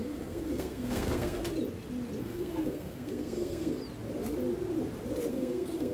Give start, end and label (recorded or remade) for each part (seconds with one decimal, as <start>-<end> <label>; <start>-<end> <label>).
0.0-1.4 remade; 1.4-2.2 recorded; 2.2-3.8 remade; 3.8-5.3 recorded; 5.3-5.9 remade